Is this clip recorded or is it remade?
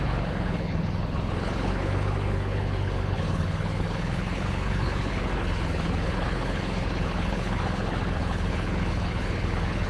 remade